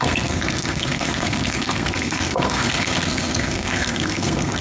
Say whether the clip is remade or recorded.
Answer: remade